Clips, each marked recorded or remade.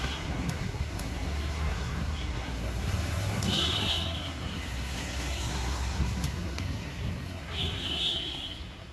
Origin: remade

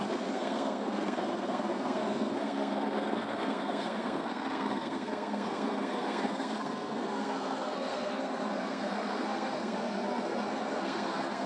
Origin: remade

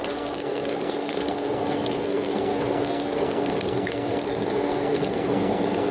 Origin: remade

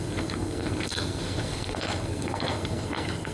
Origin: remade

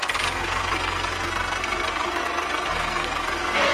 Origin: remade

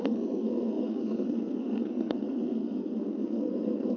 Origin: remade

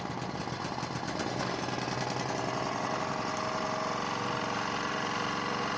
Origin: recorded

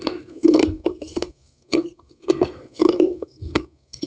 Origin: remade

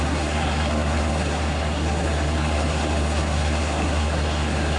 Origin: remade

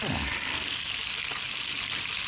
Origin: recorded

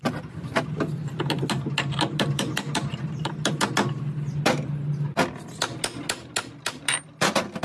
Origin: recorded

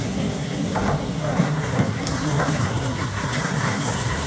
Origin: remade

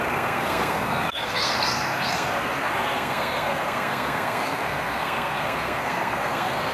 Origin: remade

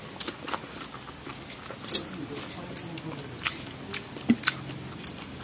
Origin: recorded